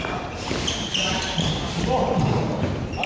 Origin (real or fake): fake